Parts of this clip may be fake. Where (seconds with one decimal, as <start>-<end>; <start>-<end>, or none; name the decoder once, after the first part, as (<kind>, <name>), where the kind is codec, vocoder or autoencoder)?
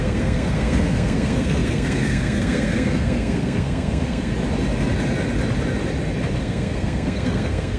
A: 0.0-4.3 (codec, SNAC); 6.4-7.8